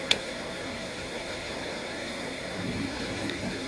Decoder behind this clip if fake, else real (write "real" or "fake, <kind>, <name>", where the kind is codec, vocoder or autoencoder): fake, codec, SNAC